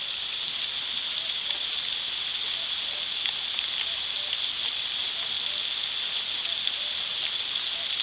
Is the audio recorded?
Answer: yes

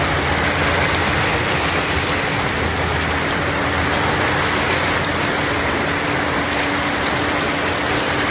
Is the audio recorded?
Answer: yes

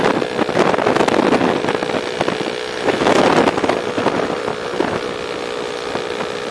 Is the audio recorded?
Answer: yes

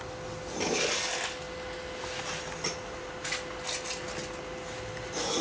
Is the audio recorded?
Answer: yes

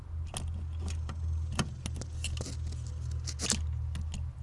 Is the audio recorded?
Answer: yes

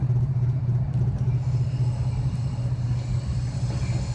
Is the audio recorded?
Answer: yes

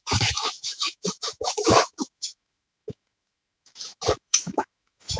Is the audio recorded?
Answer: no